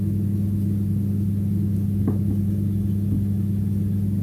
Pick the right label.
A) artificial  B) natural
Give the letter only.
B